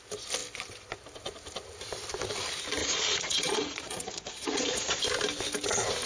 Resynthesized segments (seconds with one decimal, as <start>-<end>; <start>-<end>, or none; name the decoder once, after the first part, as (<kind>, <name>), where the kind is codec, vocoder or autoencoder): 2.8-5.0 (vocoder, Vocos)